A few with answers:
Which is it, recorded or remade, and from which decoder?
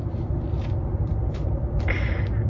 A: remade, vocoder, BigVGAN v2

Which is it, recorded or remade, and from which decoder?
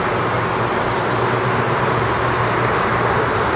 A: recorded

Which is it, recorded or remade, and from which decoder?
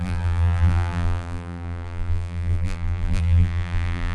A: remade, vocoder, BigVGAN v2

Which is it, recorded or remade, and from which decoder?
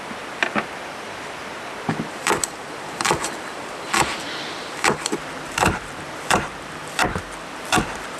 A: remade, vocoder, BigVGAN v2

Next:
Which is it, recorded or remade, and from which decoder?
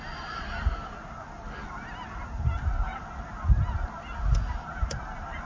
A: recorded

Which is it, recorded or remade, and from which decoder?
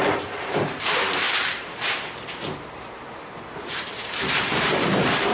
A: remade, vocoder, BigVGAN v2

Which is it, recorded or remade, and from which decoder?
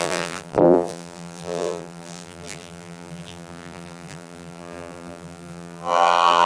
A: remade, vocoder, BigVGAN v2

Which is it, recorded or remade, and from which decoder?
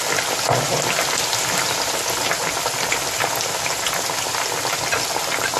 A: recorded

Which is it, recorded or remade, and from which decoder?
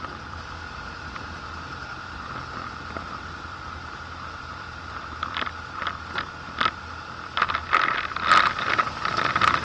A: remade, vocoder, BigVGAN v2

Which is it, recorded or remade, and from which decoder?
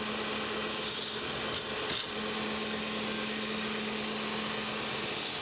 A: recorded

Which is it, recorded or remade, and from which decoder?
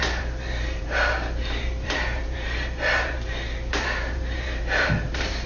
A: remade, vocoder, BigVGAN v2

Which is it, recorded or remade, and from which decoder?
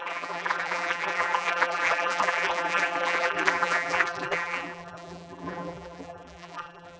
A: remade, vocoder, BigVGAN v2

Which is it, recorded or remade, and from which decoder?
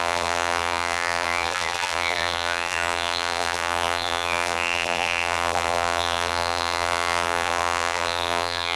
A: remade, vocoder, BigVGAN v2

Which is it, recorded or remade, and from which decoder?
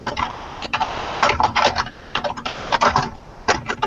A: remade, vocoder, BigVGAN v2